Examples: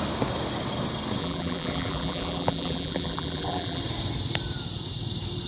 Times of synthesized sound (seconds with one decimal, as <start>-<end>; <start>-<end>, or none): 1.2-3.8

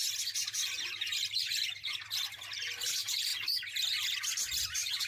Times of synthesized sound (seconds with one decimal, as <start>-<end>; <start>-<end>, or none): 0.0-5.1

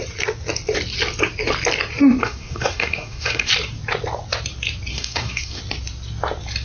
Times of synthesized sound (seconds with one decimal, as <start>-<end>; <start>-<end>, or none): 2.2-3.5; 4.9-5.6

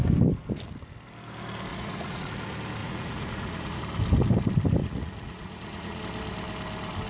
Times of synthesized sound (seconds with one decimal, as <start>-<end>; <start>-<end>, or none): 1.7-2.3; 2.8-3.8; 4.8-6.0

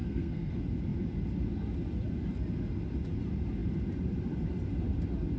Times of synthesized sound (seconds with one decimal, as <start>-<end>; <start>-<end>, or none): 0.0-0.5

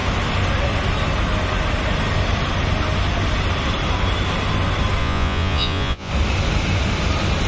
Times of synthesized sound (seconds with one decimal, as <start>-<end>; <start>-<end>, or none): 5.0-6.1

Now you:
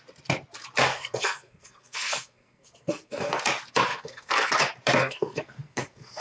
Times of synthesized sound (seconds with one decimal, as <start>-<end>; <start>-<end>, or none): 0.9-3.4; 3.9-4.5; 5.0-6.2

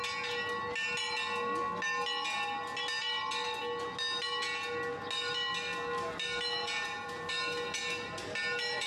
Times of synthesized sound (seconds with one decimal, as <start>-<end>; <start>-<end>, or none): 6.6-7.3